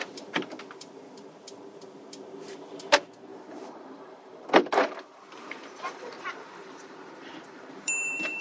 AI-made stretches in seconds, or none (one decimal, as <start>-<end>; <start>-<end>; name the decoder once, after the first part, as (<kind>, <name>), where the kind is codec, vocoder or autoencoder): 0.0-0.6 (vocoder, BigVGAN v2); 3.3-8.4